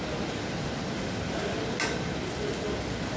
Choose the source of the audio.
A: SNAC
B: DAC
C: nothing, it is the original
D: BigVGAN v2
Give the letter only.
C